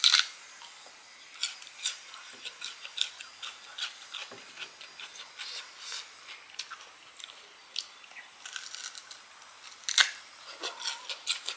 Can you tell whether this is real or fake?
real